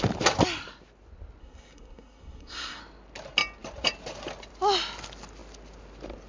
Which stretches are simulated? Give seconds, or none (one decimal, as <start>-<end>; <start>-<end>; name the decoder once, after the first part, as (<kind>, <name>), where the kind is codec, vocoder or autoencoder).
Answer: 1.4-2.8 (codec, SNAC)